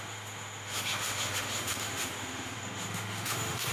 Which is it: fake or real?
fake